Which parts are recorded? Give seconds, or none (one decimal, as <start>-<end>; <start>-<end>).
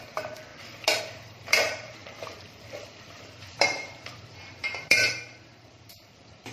0.5-1.0